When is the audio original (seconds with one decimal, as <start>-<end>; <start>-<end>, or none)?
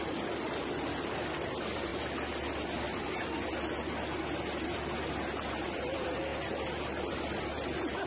1.9-5.5; 6.3-6.8